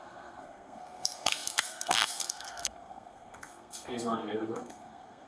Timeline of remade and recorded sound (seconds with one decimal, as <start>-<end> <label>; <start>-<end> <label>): 0.0-5.3 remade